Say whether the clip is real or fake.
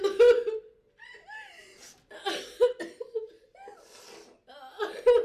real